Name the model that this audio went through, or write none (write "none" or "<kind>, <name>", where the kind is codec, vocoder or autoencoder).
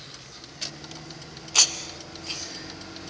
none